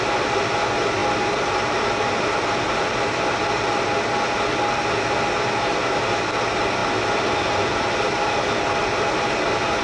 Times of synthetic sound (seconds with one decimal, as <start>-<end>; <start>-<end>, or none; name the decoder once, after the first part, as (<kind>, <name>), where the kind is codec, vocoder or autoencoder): none